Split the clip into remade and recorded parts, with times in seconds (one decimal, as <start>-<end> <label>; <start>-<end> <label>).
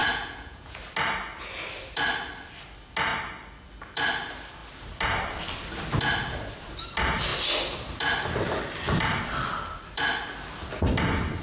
0.0-0.8 remade; 0.8-11.4 recorded